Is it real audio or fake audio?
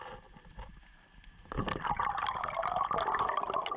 real